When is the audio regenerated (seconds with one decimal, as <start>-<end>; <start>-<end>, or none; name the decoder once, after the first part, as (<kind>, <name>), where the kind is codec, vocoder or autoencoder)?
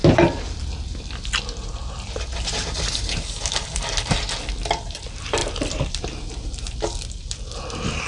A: 0.0-4.5 (vocoder, BigVGAN v2); 5.4-8.1